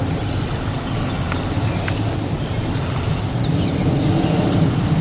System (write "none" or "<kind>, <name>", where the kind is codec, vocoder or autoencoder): none